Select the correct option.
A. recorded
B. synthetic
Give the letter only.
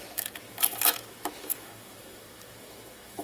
B